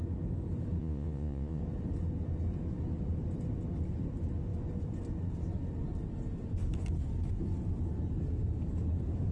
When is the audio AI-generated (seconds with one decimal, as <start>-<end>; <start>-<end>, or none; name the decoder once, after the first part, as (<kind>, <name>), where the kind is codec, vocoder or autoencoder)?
0.8-1.6 (vocoder, Vocos)